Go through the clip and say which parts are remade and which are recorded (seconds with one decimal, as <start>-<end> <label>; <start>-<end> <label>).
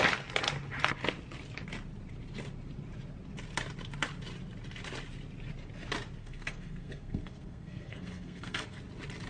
0.0-6.2 recorded; 6.2-8.8 remade; 8.8-9.3 recorded